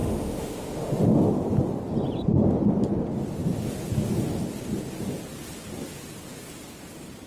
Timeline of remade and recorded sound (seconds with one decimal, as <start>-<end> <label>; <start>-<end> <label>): 0.0-1.1 remade; 1.1-7.3 recorded